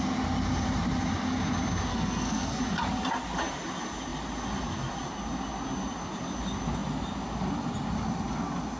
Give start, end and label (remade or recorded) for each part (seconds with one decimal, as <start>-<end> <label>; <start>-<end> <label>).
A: 0.0-1.9 recorded; 1.9-2.6 remade; 2.6-8.8 recorded